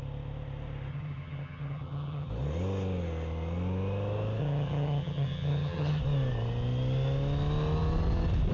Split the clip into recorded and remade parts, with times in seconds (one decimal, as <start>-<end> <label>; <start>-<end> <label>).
0.0-0.9 recorded; 0.9-2.3 remade; 2.3-4.4 recorded; 4.4-6.0 remade; 6.0-8.5 recorded